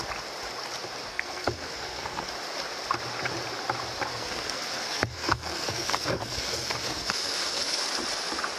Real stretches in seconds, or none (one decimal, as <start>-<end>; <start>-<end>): 0.0-1.1; 2.3-4.1; 7.8-8.6